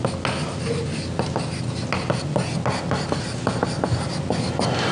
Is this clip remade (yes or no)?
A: no